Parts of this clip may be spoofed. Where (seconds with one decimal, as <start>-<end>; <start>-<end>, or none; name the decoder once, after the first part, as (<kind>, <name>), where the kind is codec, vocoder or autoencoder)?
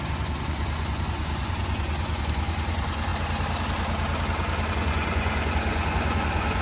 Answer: 0.0-3.1 (vocoder, Vocos); 4.7-6.6